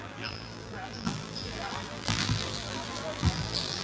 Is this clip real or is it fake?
fake